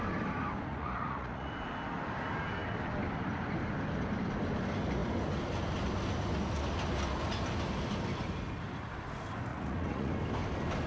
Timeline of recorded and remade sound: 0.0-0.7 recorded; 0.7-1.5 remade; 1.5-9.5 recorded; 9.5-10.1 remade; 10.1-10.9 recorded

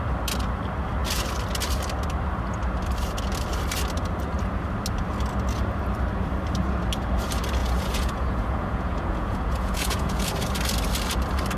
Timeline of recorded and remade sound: 0.0-7.6 recorded; 7.6-10.3 remade; 10.3-11.6 recorded

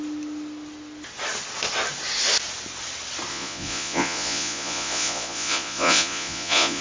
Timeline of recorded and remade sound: 0.0-3.3 recorded; 3.3-6.8 remade